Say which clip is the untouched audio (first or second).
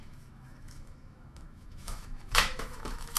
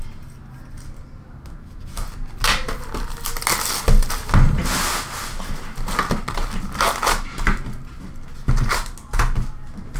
second